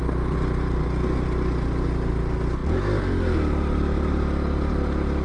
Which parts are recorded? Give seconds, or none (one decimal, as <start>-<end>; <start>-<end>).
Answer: 0.0-5.2